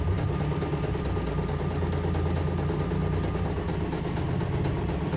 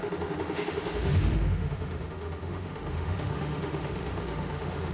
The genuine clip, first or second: first